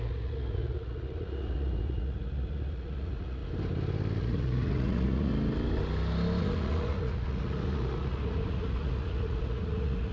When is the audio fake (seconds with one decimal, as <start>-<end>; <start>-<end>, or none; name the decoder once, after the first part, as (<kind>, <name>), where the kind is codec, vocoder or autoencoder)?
0.0-3.4 (vocoder, Vocos); 4.2-5.3; 6.4-10.1